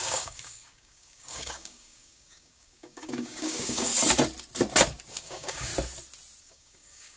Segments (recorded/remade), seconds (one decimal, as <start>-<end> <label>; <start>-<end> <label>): 0.0-3.9 remade; 3.9-5.1 recorded; 5.1-5.7 remade; 5.7-6.4 recorded; 6.4-7.2 remade